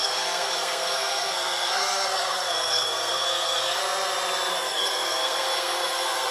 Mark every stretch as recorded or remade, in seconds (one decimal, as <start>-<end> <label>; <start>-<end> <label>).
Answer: 0.0-3.8 remade; 3.8-4.5 recorded; 4.5-6.3 remade